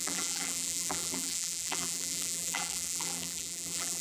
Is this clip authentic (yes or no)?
no